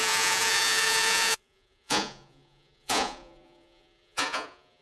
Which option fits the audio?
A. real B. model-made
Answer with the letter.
B